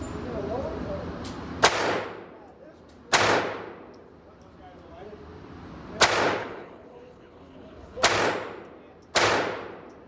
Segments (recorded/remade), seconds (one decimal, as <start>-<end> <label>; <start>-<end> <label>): 0.0-6.4 recorded; 6.4-8.0 remade; 8.0-10.1 recorded